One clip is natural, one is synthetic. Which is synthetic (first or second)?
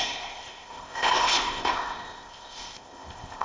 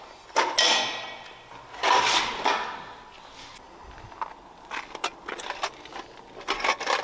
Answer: first